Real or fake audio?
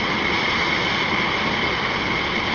real